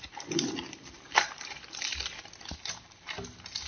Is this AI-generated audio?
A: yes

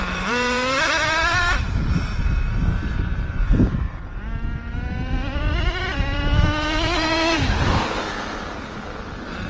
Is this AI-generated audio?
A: yes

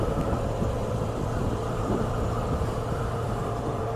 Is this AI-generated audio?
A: yes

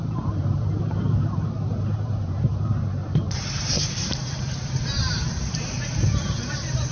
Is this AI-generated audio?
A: yes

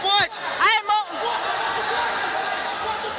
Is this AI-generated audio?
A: no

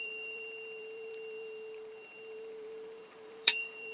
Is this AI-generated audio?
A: yes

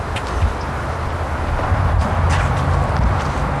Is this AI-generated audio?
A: yes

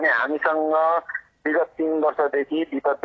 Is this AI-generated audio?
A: no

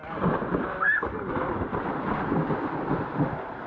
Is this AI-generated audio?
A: no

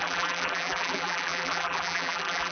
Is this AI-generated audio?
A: yes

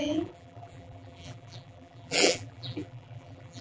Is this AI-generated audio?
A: yes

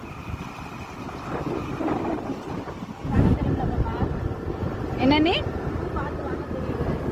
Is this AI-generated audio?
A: no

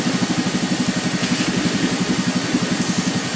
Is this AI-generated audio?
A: no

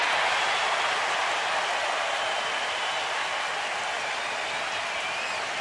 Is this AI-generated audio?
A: no